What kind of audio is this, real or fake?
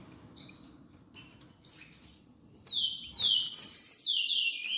real